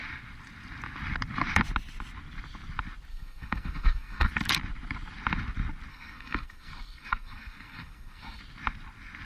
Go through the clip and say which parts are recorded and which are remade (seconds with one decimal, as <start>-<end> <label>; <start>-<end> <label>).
0.0-3.1 recorded; 3.1-4.3 remade; 4.3-5.9 recorded; 5.9-8.4 remade; 8.4-9.2 recorded